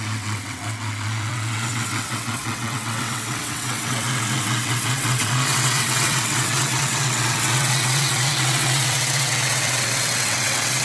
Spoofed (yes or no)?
yes